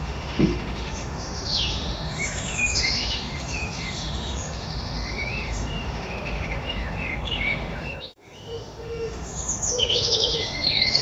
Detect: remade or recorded remade